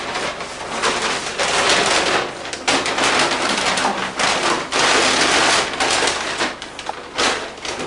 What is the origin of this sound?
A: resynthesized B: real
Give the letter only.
B